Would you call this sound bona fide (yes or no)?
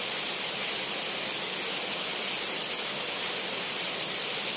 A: yes